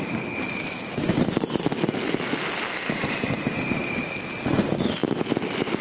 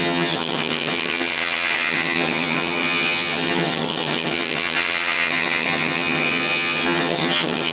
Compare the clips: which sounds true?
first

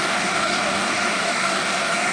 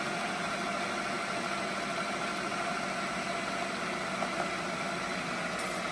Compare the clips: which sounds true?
second